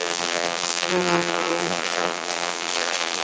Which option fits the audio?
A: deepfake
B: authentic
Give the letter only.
A